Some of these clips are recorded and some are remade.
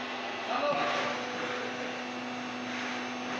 recorded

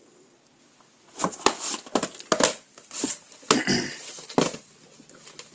recorded